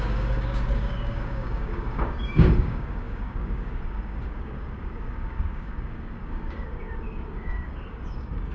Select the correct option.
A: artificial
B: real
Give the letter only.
A